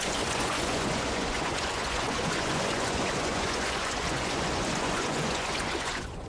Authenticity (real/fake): fake